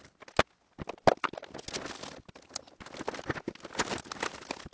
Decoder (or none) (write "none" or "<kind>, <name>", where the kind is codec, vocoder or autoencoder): none